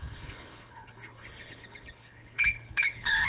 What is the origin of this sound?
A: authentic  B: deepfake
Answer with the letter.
B